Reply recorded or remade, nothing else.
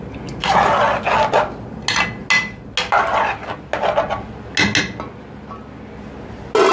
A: recorded